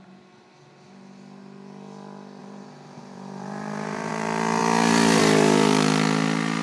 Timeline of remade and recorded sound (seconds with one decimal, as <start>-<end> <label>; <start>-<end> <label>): 0.0-2.4 recorded; 2.4-4.1 remade; 4.1-6.6 recorded